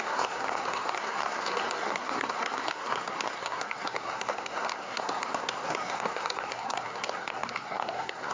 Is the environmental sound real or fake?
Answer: fake